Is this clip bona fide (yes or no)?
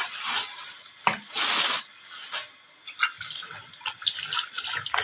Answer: yes